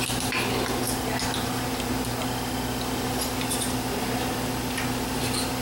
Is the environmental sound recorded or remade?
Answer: recorded